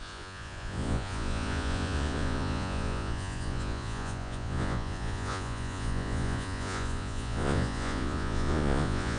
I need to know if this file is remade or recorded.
remade